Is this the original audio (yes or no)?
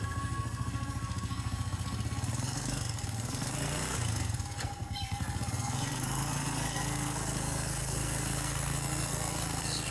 no